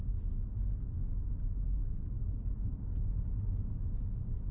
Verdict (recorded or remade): recorded